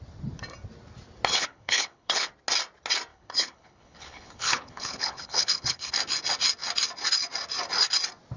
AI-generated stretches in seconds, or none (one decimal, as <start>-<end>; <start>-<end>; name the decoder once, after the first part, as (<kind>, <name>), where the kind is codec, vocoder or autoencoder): 1.3-2.3 (codec, HILCodec); 3.1-5.9